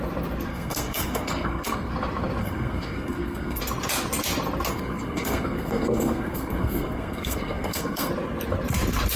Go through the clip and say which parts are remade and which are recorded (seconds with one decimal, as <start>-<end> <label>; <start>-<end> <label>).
0.0-0.5 recorded; 0.5-1.9 remade; 1.9-2.4 recorded; 2.4-3.6 remade; 3.6-4.7 recorded; 4.7-8.1 remade; 8.1-9.2 recorded

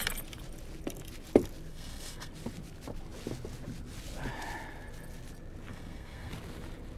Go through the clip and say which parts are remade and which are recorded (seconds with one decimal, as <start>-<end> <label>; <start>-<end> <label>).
0.0-1.7 recorded; 1.7-2.3 remade; 2.3-5.7 recorded; 5.7-6.3 remade; 6.3-7.0 recorded

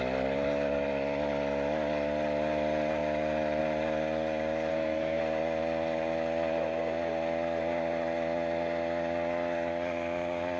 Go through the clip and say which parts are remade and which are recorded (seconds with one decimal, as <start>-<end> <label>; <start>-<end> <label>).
0.0-4.7 recorded; 4.7-5.2 remade; 5.2-10.6 recorded

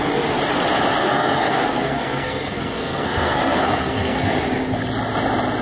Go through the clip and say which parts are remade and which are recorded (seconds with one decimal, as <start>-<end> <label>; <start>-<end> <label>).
0.0-1.0 recorded; 1.0-4.4 remade; 4.4-5.6 recorded